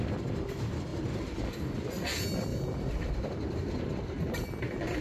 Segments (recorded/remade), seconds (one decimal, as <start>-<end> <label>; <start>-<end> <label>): 0.0-2.5 recorded; 2.5-4.6 remade; 4.6-5.0 recorded